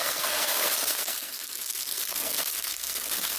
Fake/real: fake